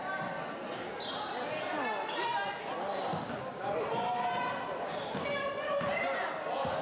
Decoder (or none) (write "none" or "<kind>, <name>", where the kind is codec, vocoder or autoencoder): none